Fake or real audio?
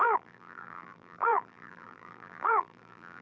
fake